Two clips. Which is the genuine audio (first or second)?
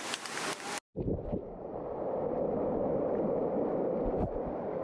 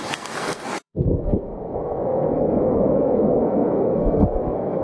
first